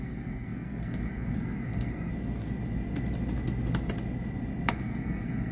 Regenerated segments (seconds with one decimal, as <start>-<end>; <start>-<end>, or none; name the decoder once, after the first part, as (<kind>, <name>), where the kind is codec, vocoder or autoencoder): 0.0-2.1 (codec, SNAC); 4.7-5.5